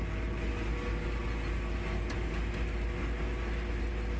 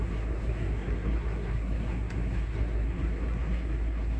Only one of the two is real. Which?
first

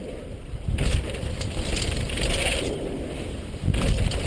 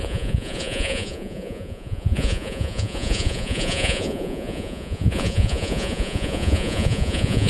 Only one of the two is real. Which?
first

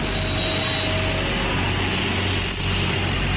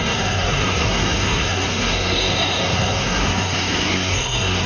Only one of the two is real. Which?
first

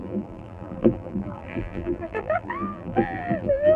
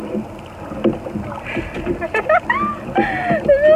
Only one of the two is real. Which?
second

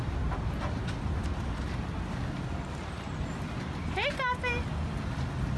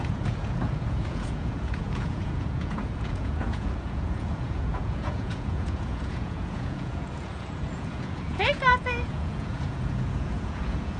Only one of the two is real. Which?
first